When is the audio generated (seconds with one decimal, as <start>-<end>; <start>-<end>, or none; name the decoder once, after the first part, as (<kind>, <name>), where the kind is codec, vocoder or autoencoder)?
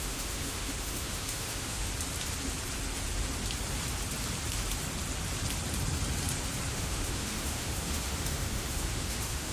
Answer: 0.0-1.9 (autoencoder, DAC-VAE); 6.7-9.5